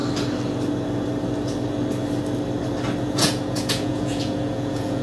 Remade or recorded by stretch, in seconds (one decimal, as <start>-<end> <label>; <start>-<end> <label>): 0.0-3.0 recorded; 3.0-5.0 remade